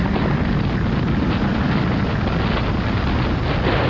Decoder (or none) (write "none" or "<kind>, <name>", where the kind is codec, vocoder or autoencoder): none